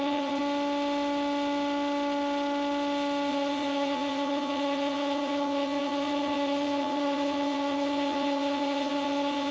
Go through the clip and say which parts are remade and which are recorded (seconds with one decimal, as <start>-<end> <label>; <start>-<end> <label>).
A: 0.0-0.4 remade; 0.4-3.3 recorded; 3.3-9.5 remade